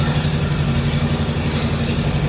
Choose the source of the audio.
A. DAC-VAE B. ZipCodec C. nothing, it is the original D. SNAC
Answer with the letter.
C